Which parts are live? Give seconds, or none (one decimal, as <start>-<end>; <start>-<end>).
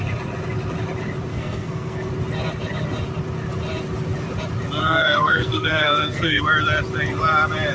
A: 0.0-1.3; 2.1-4.8; 6.4-7.7